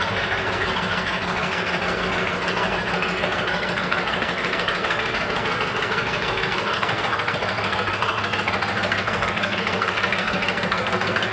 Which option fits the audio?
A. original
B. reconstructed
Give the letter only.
B